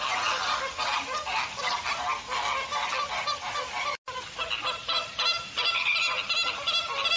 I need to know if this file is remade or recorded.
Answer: recorded